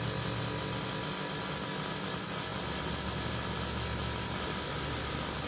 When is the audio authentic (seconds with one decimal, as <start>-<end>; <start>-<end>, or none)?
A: 0.0-5.5